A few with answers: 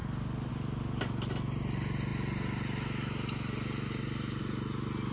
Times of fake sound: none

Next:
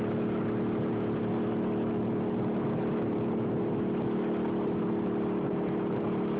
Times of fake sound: none

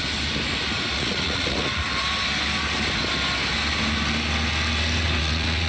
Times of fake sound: 0.9-1.9; 5.2-5.7

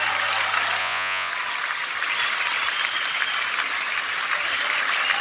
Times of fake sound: 0.8-1.3

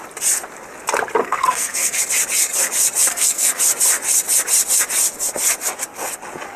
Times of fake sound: 1.2-2.0; 3.1-3.6

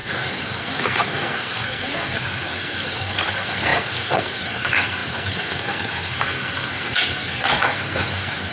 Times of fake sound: 0.0-8.5

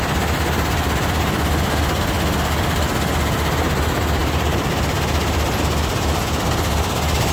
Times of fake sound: none

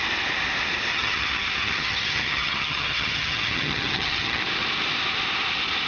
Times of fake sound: 0.9-4.4